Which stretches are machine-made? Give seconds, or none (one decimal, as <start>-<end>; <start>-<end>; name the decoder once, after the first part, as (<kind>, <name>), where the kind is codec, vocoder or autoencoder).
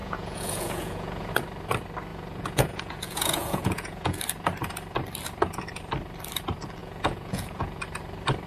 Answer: 0.0-1.3 (vocoder, Vocos); 2.1-4.2; 6.8-7.8